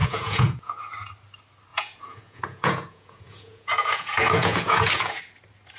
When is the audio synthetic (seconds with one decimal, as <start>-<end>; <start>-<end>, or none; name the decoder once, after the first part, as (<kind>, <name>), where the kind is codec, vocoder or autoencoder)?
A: 0.0-1.1 (vocoder, Vocos); 1.7-5.2